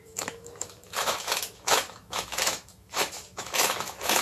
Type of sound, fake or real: fake